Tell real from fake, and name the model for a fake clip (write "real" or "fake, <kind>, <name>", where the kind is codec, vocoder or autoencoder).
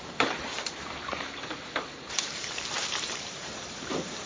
fake, vocoder, BigVGAN v2